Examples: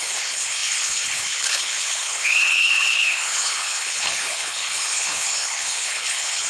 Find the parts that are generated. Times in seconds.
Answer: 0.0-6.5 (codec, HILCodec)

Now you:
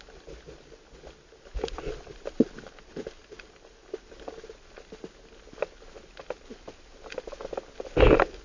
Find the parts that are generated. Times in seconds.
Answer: none

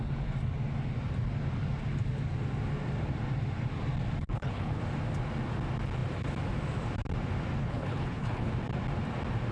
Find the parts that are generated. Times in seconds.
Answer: 4.2-4.8 (codec, HILCodec); 7.6-8.5

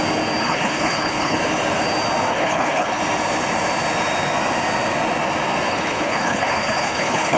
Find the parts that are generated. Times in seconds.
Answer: 0.4-1.4 (codec, HILCodec); 2.3-3.0; 5.7-7.4